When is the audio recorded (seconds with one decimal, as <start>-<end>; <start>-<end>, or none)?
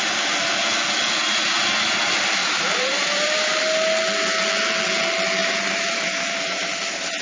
0.0-2.4; 3.6-5.4